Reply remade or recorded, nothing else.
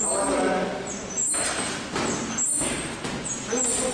recorded